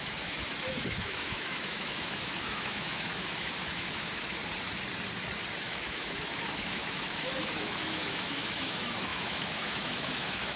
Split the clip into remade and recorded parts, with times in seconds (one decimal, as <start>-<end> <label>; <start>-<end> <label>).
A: 0.0-4.4 remade; 4.4-5.6 recorded; 5.6-10.6 remade